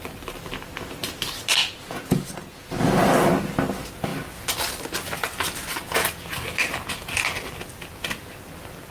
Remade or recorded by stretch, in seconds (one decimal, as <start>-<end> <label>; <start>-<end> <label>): 0.0-1.6 recorded; 1.6-2.7 remade; 2.7-8.9 recorded

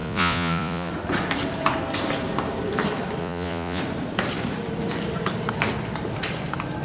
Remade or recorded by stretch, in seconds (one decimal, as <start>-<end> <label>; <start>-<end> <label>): 0.0-0.9 remade; 0.9-3.2 recorded; 3.2-3.8 remade; 3.8-6.8 recorded